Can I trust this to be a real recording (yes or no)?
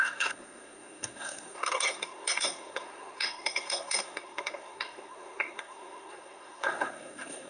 no